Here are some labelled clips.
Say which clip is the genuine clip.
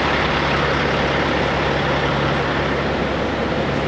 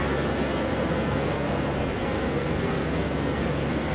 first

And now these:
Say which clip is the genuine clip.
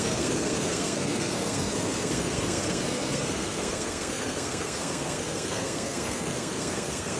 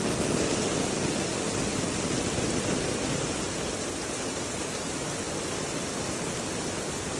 second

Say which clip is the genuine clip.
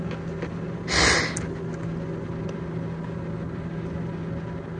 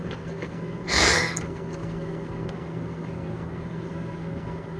first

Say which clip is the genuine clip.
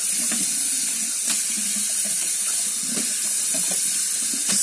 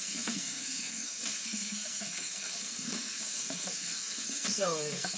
first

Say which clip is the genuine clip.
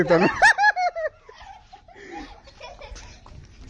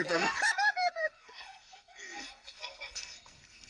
first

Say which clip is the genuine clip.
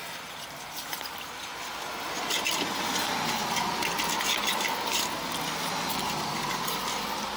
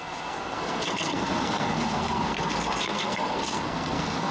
first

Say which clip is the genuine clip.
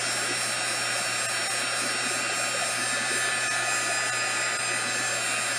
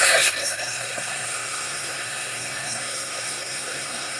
first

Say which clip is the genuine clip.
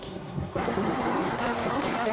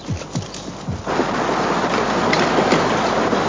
second